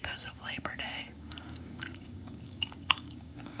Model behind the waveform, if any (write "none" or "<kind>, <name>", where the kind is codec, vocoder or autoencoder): codec, DAC